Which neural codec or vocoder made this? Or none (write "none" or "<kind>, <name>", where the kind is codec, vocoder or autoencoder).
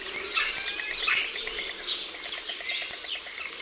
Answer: none